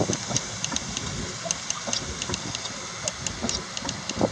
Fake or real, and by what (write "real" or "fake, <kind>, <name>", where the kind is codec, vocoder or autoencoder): real